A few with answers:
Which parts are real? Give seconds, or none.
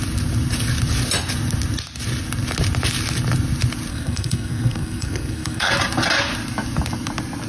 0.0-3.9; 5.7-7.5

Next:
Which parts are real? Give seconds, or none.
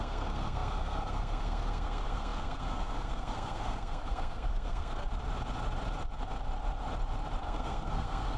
5.0-7.4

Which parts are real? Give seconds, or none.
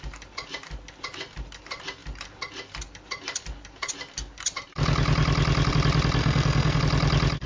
0.0-6.2; 6.8-7.5